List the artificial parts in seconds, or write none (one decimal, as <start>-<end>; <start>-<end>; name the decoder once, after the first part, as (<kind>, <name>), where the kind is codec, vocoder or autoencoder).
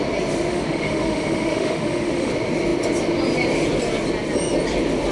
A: 0.5-2.3 (autoencoder, DAC-VAE)